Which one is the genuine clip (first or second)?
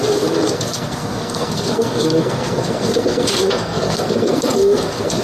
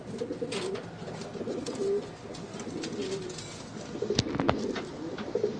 second